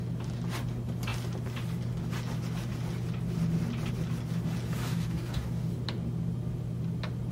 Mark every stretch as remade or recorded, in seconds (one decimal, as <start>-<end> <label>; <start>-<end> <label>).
0.0-4.8 recorded; 4.8-5.7 remade; 5.7-7.3 recorded